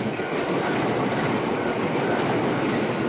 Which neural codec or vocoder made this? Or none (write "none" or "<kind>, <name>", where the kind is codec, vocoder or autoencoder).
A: vocoder, BigVGAN v2